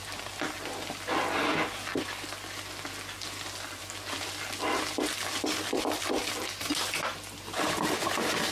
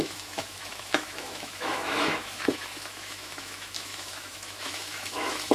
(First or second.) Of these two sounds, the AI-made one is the second